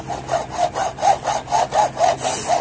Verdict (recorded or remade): recorded